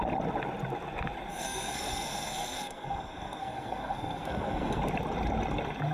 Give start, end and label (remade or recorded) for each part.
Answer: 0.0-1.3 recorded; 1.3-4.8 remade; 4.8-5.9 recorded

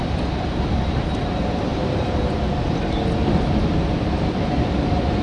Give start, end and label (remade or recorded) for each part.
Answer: 0.0-5.2 recorded

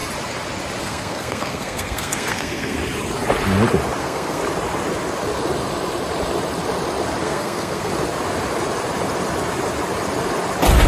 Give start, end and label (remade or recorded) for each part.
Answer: 0.0-0.8 recorded; 0.8-2.8 remade; 2.8-4.0 recorded; 4.0-4.4 remade; 4.4-7.2 recorded; 7.2-7.9 remade; 7.9-10.9 recorded

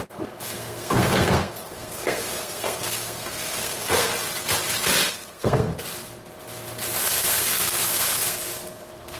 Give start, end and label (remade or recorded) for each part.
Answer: 0.0-4.1 remade; 4.1-5.1 recorded; 5.1-5.7 remade; 5.7-7.0 recorded; 7.0-9.2 remade